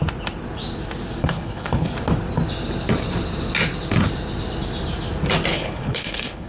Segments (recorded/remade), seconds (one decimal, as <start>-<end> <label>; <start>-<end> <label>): 0.0-1.2 recorded; 1.2-1.9 remade; 1.9-5.5 recorded; 5.5-6.5 remade